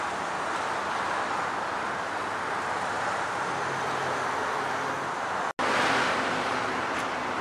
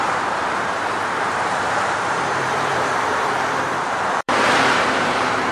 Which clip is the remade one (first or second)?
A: second